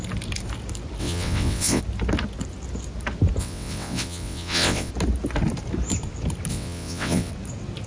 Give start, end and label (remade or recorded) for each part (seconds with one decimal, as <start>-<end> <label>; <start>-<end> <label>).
0.0-1.0 recorded; 1.0-1.8 remade; 1.8-3.4 recorded; 3.4-4.9 remade; 4.9-6.5 recorded; 6.5-7.3 remade; 7.3-7.9 recorded